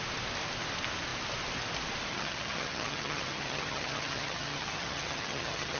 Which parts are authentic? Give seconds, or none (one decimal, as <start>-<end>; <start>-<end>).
0.0-2.1